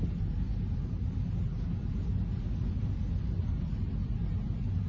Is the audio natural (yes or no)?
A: yes